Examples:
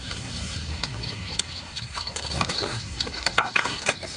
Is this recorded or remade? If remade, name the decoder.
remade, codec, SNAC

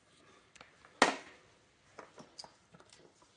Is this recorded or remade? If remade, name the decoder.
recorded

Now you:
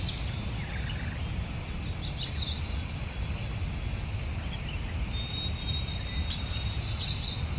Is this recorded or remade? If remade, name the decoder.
recorded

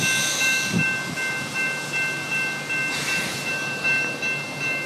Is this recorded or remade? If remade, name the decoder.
recorded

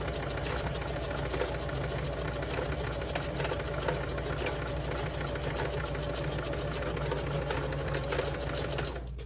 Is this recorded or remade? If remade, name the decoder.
recorded